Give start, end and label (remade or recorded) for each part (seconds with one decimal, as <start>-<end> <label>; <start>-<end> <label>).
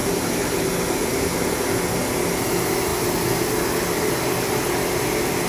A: 0.0-1.6 remade; 1.6-5.5 recorded